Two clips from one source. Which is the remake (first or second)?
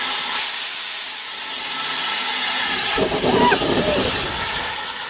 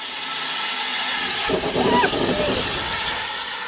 first